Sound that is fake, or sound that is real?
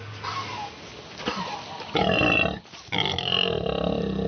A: real